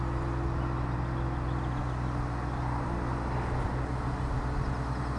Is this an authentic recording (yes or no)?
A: yes